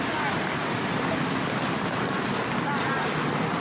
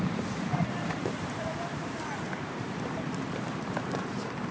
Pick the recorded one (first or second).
first